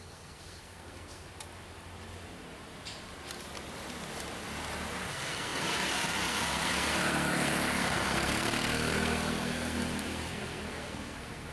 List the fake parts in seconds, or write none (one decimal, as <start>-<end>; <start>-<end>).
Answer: 0.0-1.3; 5.1-11.5